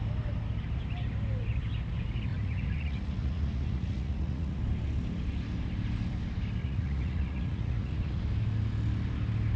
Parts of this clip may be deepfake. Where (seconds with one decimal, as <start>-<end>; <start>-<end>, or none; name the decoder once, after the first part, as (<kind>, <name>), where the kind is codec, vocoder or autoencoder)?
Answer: 2.3-4.6 (vocoder, Vocos); 6.6-8.2